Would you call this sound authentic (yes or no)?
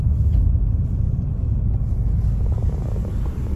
yes